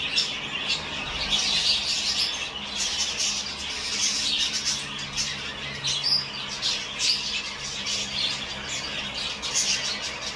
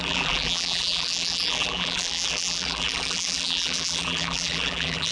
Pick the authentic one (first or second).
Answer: first